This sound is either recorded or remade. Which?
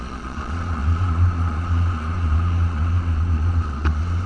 remade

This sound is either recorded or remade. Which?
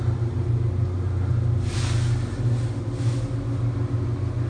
recorded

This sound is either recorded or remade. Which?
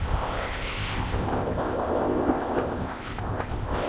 remade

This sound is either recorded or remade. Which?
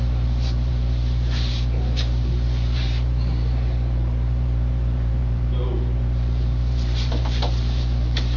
remade